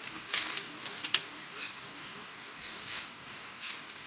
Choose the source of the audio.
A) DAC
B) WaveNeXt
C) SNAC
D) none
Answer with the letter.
A